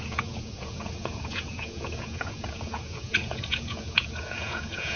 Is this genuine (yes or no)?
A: no